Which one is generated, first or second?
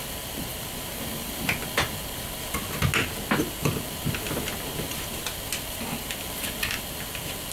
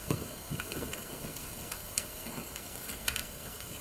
second